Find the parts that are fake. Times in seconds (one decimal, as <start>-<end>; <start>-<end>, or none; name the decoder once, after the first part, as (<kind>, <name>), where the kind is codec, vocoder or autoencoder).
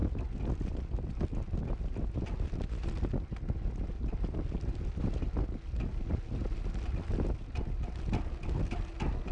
none